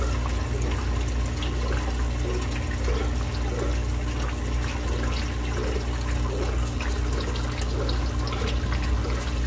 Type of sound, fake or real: real